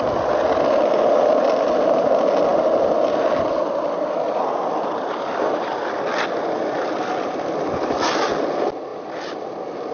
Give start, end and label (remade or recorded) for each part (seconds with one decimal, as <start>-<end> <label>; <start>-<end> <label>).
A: 0.0-9.9 recorded